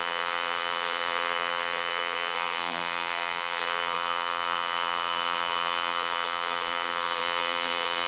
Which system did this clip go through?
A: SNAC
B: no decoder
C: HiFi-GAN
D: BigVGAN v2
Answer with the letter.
D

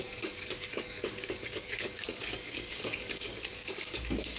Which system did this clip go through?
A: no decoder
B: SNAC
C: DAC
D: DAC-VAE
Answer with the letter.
C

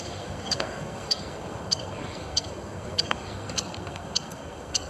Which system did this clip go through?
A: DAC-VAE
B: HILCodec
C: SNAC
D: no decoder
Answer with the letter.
C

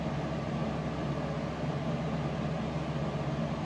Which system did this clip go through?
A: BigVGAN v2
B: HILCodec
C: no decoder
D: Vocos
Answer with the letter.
C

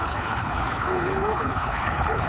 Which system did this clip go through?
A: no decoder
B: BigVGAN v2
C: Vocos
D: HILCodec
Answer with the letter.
D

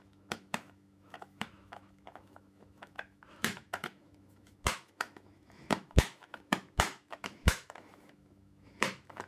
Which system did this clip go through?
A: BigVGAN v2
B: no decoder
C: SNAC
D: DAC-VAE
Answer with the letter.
D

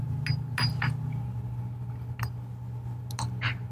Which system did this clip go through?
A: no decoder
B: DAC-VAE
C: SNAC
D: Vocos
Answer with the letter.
A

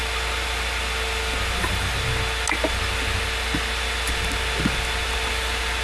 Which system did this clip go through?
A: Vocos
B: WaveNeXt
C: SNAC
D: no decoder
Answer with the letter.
D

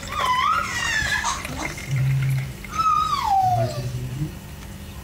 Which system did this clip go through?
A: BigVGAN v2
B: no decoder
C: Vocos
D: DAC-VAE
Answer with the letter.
A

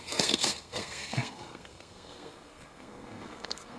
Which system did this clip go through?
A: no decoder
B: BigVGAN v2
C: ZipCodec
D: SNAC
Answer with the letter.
D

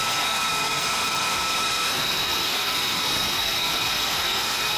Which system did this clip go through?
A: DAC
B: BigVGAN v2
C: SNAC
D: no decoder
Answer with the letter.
C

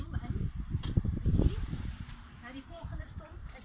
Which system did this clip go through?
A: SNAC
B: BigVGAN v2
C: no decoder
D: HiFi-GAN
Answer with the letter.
B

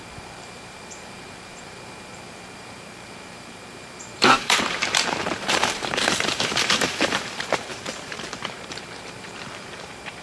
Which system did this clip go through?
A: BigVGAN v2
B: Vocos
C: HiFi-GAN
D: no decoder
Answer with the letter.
A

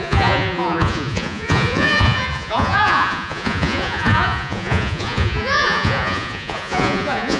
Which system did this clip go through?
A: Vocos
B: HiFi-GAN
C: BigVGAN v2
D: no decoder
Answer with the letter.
A